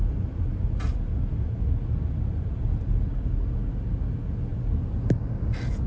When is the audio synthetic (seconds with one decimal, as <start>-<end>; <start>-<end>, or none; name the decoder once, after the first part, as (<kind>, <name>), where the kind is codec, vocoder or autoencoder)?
none